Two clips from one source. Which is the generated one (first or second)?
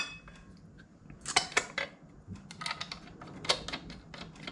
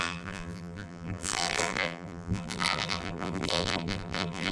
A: second